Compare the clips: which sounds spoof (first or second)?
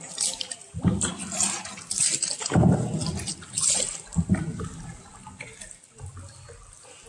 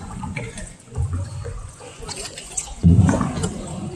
second